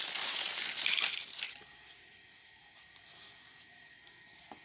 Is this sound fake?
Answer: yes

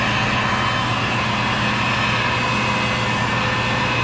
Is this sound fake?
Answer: no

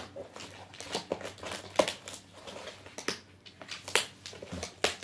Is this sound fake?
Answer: no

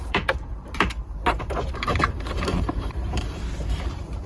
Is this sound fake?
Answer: yes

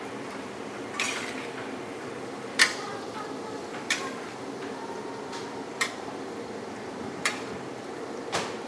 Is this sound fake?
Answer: yes